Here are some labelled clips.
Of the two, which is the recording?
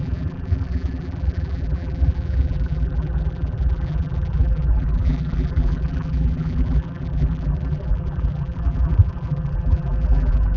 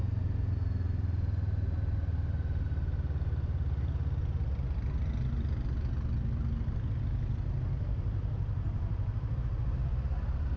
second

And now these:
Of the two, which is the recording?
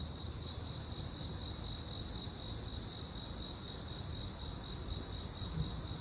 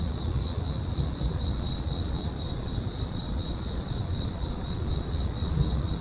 first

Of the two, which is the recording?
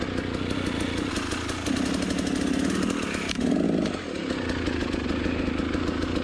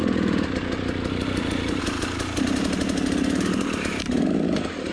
first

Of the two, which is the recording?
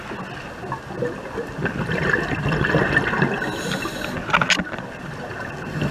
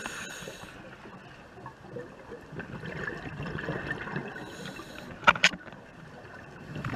first